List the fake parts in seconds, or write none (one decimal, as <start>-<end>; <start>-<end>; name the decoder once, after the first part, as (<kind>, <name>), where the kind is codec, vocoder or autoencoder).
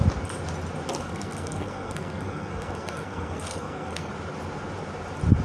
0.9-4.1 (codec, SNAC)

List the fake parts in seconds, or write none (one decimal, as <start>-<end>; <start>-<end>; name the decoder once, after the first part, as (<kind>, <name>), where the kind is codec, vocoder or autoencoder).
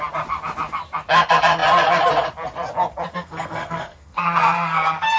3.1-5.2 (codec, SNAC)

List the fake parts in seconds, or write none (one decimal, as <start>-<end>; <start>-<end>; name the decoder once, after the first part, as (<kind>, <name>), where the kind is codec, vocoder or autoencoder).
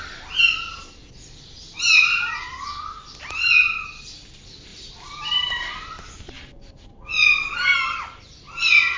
4.7-6.6 (vocoder, BigVGAN v2)